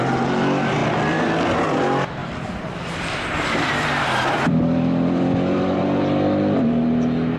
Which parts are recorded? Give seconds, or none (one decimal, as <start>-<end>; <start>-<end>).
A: 0.0-0.8; 1.6-2.2; 5.8-7.4